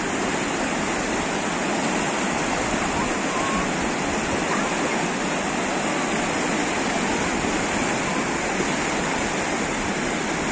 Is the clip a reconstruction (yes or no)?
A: no